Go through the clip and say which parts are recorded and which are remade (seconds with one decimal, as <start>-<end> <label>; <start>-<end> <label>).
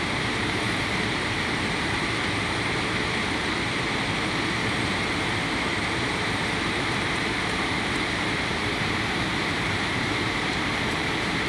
0.0-11.5 remade